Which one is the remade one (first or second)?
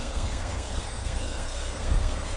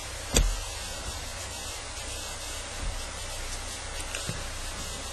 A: first